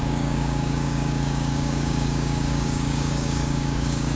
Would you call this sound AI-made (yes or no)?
yes